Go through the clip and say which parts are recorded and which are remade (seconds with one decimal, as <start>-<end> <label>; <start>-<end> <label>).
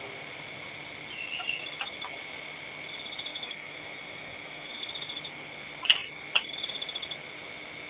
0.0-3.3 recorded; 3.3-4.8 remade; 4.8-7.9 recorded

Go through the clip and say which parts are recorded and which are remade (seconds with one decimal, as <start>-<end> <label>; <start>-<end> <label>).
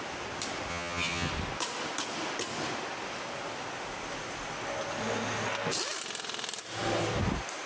0.0-0.7 recorded; 0.7-1.3 remade; 1.3-7.7 recorded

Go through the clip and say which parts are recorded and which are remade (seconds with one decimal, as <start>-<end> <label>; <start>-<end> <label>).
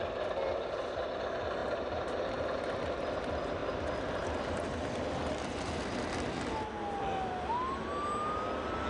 0.0-1.6 recorded; 1.6-2.8 remade; 2.8-8.9 recorded